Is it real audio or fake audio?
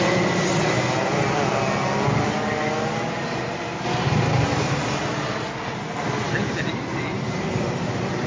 real